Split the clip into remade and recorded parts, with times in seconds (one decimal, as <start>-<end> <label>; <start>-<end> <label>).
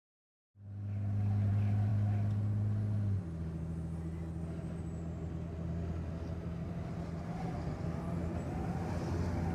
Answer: 0.0-9.5 recorded